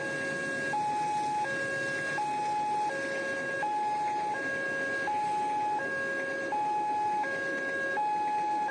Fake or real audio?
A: real